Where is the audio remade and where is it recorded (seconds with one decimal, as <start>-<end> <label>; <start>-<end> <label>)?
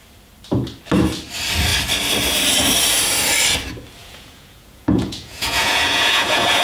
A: 0.0-4.0 recorded; 4.0-6.6 remade